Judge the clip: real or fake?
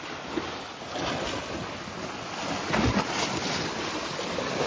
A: real